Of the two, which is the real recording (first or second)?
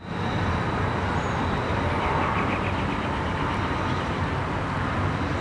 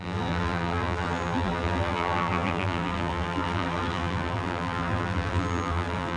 first